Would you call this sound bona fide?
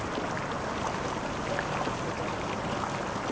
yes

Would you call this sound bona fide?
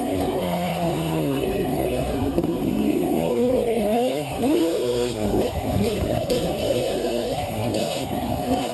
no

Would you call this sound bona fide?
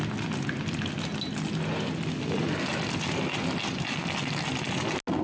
yes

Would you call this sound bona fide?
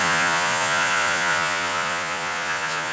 no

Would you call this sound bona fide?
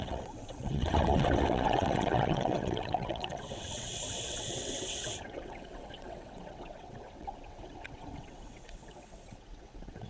no